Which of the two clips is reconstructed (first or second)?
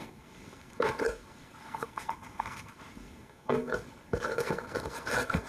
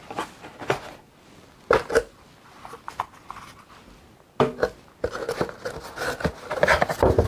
first